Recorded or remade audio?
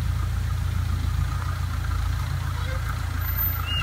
recorded